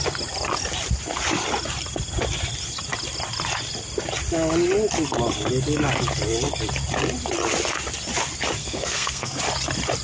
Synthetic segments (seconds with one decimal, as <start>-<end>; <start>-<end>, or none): 8.6-9.4